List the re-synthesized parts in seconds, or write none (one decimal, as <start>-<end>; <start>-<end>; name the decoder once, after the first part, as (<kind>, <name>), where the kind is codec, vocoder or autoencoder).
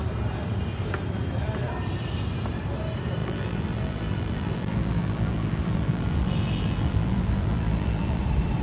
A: 3.2-8.2 (vocoder, BigVGAN v2)